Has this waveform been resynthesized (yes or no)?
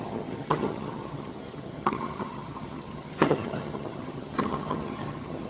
yes